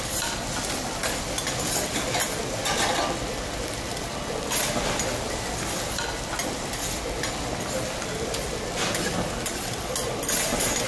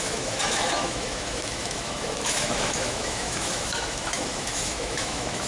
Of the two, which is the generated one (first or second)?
second